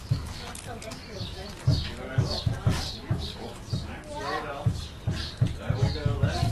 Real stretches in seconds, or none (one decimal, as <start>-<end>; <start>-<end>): none